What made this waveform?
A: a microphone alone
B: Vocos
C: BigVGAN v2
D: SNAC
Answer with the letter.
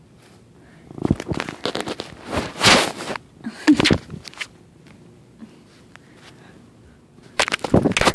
A